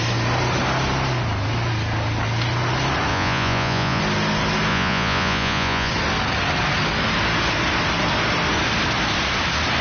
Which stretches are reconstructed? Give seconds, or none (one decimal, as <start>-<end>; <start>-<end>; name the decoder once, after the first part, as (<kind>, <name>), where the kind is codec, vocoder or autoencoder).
3.1-4.0 (vocoder, Vocos); 4.7-5.9